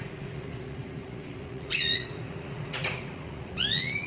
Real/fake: fake